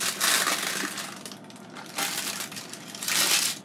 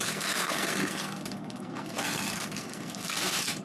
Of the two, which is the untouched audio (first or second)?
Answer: first